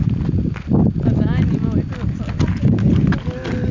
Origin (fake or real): real